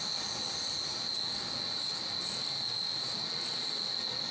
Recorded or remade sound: recorded